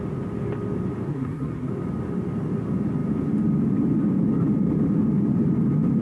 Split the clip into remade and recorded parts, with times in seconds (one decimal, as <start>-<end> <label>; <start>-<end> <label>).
0.0-1.1 recorded; 1.1-1.7 remade; 1.7-6.0 recorded